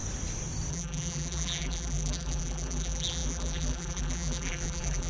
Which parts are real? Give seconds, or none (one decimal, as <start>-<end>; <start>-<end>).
0.0-0.7